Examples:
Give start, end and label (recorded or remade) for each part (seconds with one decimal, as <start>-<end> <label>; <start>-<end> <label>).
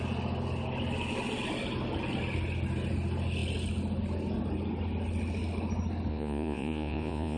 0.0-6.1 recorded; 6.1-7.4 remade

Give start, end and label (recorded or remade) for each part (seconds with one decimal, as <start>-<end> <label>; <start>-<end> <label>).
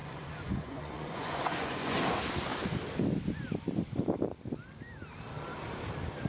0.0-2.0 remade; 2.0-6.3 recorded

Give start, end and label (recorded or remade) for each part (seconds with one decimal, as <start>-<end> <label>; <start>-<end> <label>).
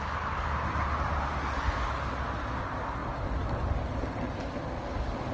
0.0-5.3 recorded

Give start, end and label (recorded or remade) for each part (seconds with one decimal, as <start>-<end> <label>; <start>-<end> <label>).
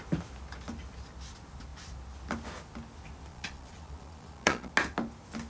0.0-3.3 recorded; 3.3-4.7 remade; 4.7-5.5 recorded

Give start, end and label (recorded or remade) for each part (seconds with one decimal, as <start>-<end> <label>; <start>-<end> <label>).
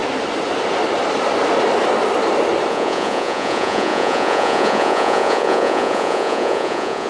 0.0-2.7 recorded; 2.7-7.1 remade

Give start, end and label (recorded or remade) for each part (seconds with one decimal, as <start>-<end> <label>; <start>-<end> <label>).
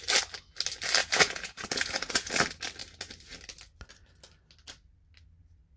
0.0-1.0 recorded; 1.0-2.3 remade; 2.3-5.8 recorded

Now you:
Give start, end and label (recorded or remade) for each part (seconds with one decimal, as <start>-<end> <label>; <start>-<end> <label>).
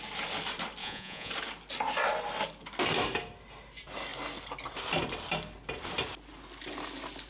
0.0-0.8 recorded; 0.8-1.3 remade; 1.3-7.3 recorded